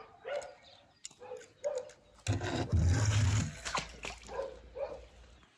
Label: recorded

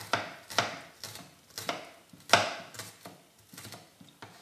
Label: recorded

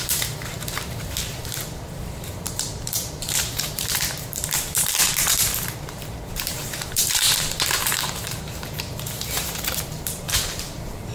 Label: remade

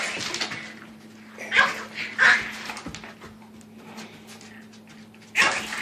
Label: recorded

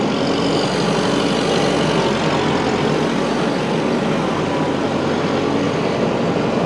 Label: recorded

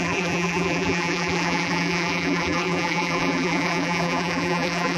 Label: remade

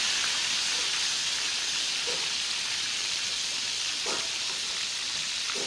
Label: recorded